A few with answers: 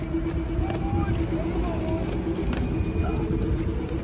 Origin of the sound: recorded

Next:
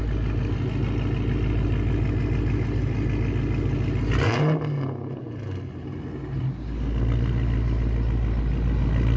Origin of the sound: recorded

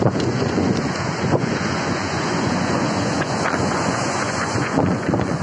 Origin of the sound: remade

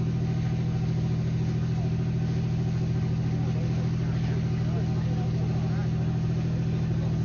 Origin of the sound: recorded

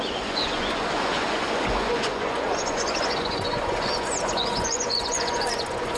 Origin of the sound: remade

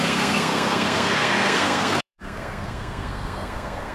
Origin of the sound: remade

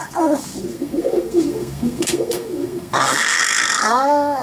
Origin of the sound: remade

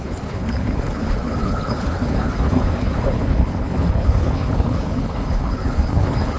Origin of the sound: remade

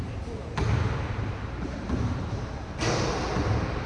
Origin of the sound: recorded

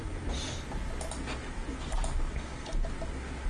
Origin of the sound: recorded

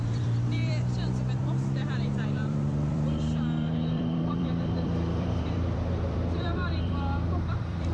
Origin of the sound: remade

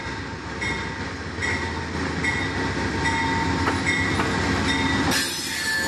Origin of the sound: recorded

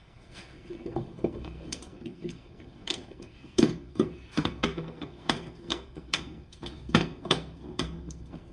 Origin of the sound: remade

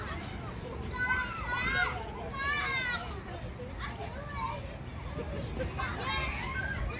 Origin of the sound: recorded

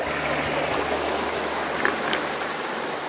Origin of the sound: recorded